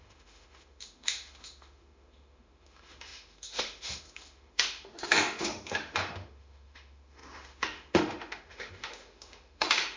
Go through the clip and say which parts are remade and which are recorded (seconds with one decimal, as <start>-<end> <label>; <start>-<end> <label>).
0.0-10.0 remade